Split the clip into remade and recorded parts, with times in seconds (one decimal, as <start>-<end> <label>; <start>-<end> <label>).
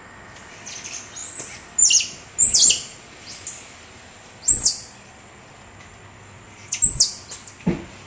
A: 0.0-8.1 recorded